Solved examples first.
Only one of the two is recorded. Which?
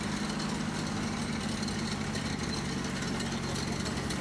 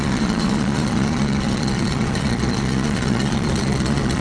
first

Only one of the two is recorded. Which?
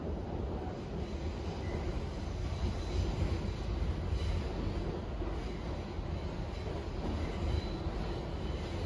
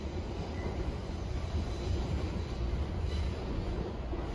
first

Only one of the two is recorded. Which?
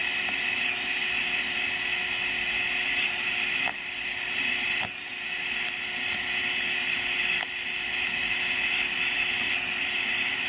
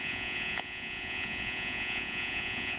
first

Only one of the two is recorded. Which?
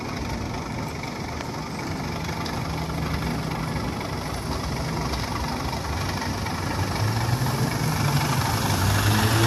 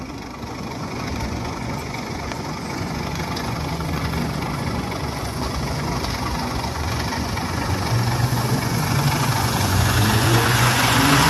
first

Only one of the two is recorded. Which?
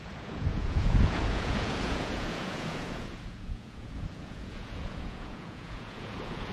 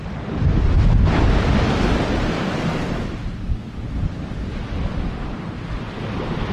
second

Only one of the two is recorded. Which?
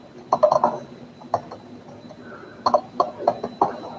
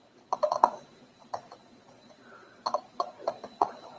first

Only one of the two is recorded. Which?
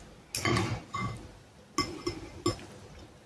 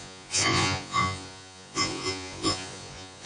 first